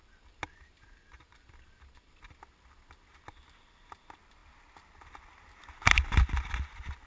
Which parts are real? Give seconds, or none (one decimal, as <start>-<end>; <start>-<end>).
0.0-7.1